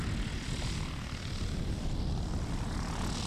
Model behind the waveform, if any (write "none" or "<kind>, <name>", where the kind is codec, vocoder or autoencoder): none